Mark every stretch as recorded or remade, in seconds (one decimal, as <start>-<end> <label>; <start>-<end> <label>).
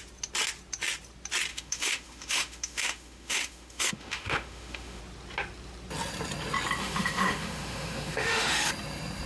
0.0-1.5 recorded; 1.5-5.0 remade; 5.0-6.8 recorded; 6.8-8.7 remade; 8.7-9.3 recorded